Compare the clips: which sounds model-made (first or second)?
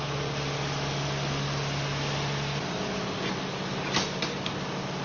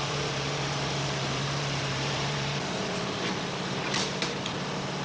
second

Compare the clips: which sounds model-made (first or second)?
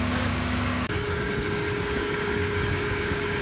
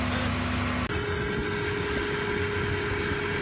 first